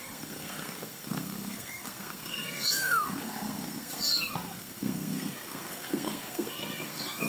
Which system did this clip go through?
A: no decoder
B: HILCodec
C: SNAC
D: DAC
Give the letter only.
C